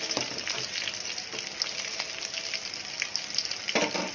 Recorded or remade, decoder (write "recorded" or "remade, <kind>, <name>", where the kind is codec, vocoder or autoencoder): recorded